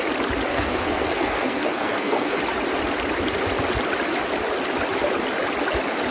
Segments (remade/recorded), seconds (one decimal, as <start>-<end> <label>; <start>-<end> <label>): 0.0-0.5 recorded; 0.5-2.4 remade; 2.4-6.1 recorded